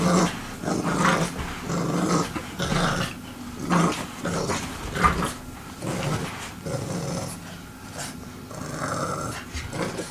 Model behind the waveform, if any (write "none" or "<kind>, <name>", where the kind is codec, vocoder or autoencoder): none